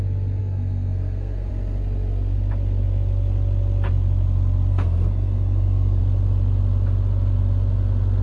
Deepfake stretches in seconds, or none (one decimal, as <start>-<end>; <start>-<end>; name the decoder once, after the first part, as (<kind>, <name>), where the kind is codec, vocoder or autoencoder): 0.4-1.5 (codec, SNAC); 4.7-6.0